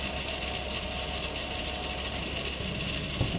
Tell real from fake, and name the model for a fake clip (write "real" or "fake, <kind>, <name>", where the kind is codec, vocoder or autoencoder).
real